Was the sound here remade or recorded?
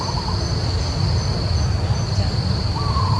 recorded